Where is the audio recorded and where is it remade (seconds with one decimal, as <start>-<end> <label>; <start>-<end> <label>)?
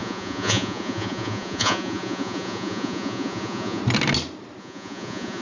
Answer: 0.0-3.8 remade; 3.8-4.6 recorded; 4.6-5.4 remade